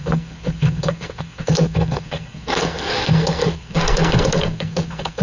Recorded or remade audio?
remade